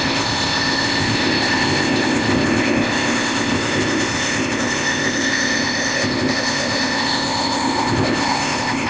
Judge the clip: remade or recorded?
remade